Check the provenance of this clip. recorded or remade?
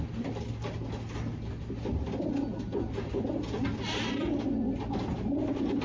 recorded